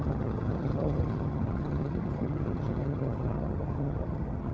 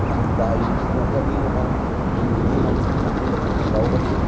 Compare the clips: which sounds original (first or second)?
second